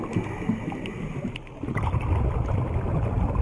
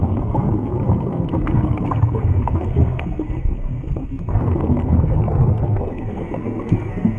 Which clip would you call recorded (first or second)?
first